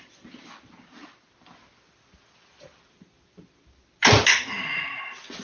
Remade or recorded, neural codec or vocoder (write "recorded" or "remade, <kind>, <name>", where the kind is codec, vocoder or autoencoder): recorded